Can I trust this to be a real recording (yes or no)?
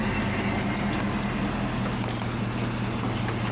yes